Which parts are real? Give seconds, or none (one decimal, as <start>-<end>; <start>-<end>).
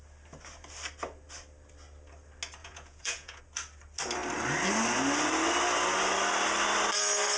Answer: 0.0-2.6; 3.4-7.4